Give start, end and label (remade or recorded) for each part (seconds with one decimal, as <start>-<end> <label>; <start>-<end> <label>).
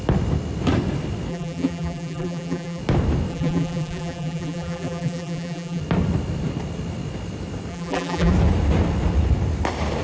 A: 0.0-1.3 recorded; 1.3-2.8 remade; 2.8-3.3 recorded; 3.3-5.8 remade; 5.8-7.7 recorded; 7.7-8.3 remade; 8.3-10.0 recorded